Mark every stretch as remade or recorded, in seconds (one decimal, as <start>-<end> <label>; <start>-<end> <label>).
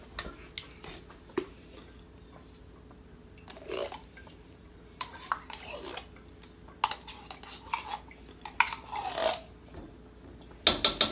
0.0-3.5 recorded; 3.5-5.3 remade; 5.3-11.1 recorded